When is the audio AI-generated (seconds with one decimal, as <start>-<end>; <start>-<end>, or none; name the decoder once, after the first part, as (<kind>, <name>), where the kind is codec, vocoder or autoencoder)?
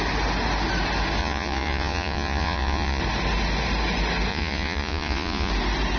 1.2-3.0 (vocoder, Vocos); 4.3-5.5